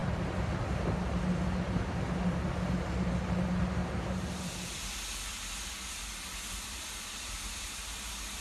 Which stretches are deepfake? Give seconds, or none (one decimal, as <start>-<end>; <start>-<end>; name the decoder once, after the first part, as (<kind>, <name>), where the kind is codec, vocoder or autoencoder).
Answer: 3.8-4.4 (vocoder, BigVGAN v2)